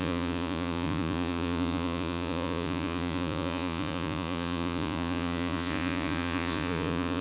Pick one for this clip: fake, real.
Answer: fake